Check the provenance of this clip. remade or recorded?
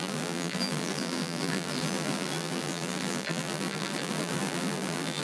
remade